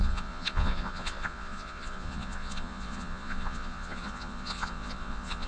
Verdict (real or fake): fake